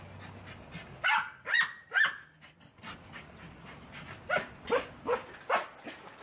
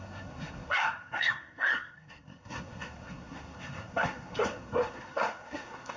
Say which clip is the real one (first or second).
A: first